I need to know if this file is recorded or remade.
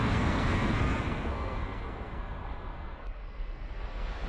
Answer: remade